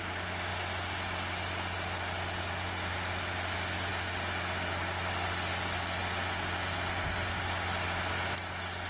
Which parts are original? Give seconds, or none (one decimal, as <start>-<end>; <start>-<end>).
0.0-8.9